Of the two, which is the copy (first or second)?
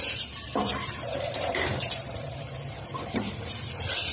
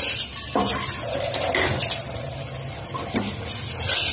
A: first